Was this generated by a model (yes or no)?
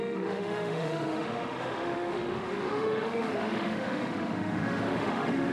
yes